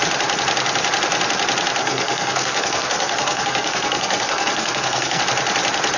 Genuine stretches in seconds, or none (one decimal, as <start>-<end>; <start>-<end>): 0.0-1.8; 5.2-6.0